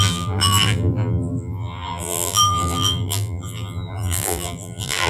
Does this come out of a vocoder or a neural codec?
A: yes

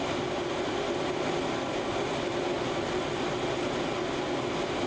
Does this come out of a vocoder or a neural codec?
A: no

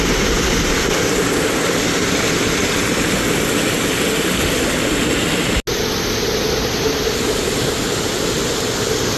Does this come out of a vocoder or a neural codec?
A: no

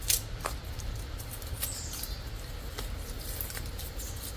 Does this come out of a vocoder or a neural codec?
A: no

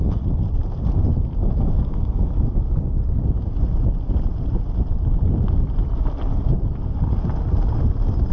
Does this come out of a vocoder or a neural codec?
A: no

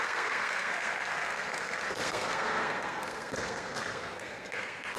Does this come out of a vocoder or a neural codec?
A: yes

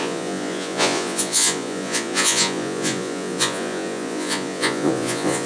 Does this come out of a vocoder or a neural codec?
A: yes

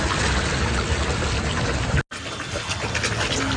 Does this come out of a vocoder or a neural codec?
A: no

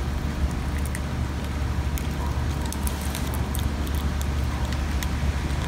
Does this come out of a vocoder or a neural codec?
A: no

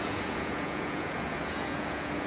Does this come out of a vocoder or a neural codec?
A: yes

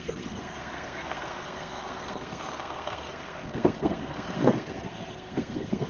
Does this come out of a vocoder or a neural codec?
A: yes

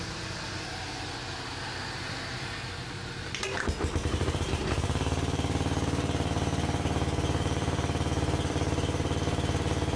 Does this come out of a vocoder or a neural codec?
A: yes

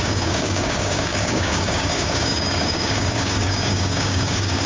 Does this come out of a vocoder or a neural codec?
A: yes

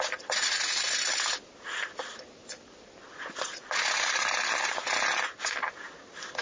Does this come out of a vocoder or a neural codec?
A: no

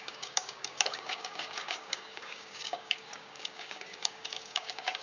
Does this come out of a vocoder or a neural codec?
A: yes